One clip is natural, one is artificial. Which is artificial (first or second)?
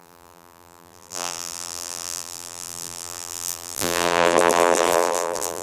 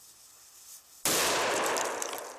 first